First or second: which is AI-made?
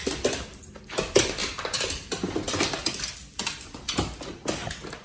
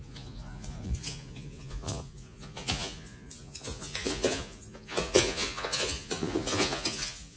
second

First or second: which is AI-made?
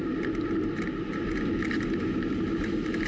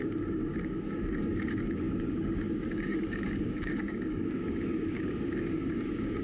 second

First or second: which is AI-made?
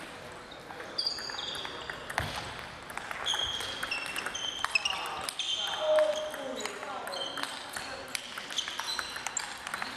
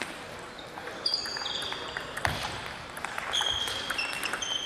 second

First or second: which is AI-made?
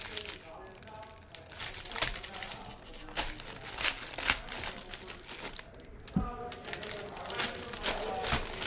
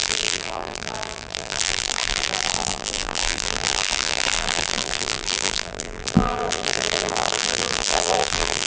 second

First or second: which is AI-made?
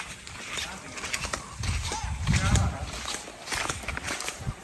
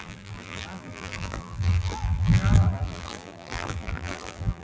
second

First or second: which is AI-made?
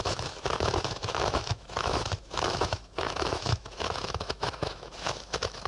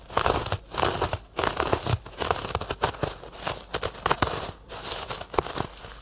first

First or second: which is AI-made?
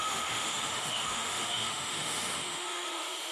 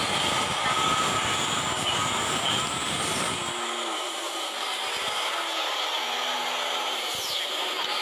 first